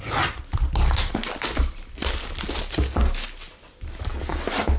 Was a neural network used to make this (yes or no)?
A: no